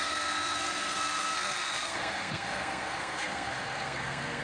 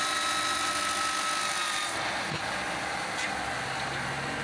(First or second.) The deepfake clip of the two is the first